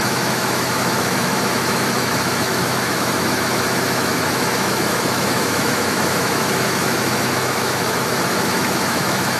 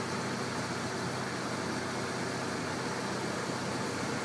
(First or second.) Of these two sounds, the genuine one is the second